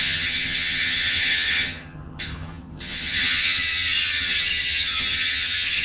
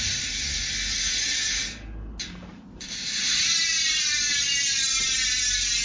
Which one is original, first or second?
second